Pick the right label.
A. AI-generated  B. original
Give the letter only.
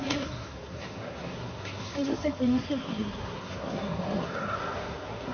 A